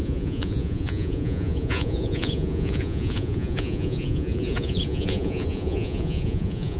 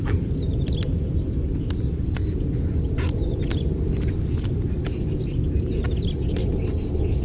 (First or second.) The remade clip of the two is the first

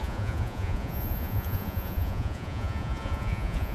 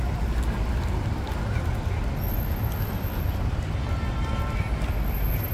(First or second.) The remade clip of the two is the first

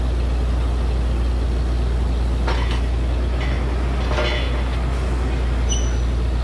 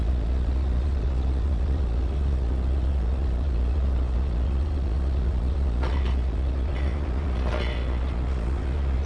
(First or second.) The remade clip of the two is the second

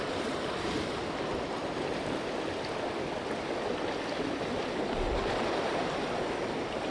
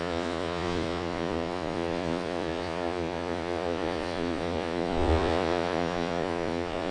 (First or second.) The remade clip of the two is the second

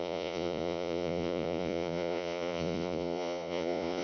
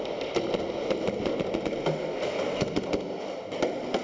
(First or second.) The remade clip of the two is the first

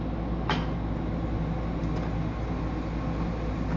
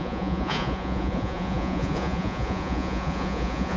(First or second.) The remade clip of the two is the second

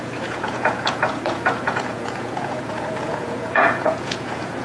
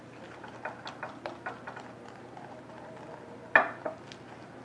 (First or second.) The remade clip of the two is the first